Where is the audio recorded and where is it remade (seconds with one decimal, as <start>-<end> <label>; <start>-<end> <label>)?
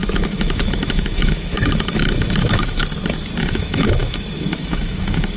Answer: 0.0-2.8 remade; 2.8-3.4 recorded; 3.4-5.4 remade